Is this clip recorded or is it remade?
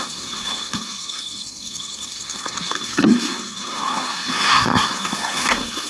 remade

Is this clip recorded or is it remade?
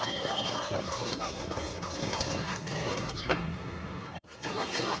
remade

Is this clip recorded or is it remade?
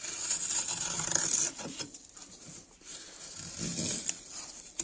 recorded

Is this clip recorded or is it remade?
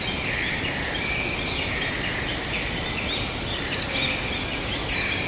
recorded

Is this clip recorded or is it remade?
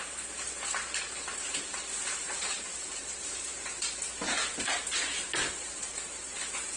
remade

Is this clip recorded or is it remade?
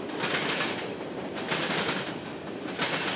recorded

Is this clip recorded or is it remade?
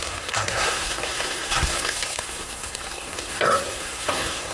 remade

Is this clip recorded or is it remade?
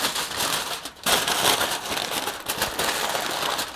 recorded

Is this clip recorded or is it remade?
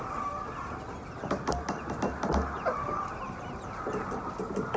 recorded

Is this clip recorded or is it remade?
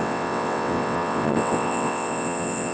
remade